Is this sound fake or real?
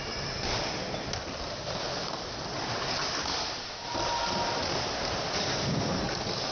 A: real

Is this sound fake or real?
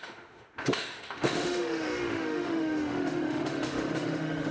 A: fake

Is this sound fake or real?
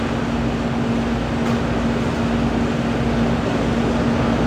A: real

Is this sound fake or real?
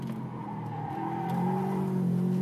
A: real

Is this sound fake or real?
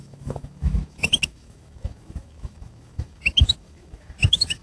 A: fake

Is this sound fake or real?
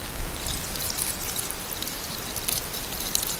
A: real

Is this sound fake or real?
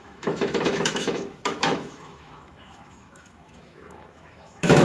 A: fake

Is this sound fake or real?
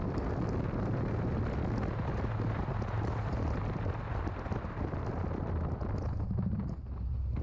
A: real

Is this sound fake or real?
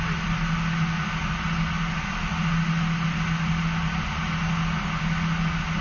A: real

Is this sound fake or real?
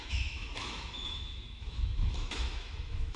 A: fake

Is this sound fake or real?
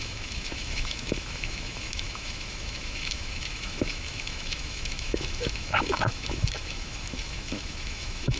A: fake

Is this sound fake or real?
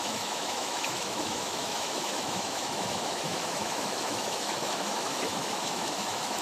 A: fake